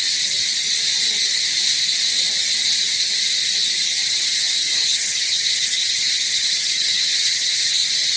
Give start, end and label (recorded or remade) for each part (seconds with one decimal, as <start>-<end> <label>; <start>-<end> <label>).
0.0-4.0 recorded; 4.0-7.7 remade; 7.7-8.2 recorded